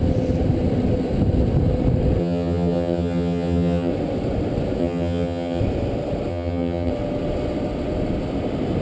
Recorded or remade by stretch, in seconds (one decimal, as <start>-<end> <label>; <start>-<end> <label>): 0.0-2.2 recorded; 2.2-3.9 remade; 3.9-4.8 recorded; 4.8-5.6 remade; 5.6-6.3 recorded; 6.3-6.9 remade; 6.9-8.8 recorded